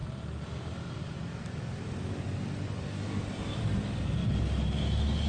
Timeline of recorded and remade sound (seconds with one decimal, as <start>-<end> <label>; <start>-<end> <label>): 0.0-3.2 remade; 3.2-5.3 recorded